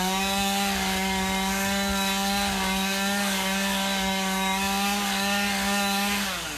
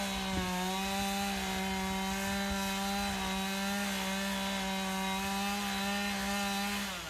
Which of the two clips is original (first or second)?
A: second